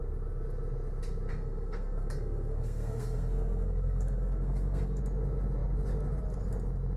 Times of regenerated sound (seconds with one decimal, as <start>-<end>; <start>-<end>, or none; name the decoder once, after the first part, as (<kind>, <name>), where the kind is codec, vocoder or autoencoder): 1.3-5.0 (codec, SNAC)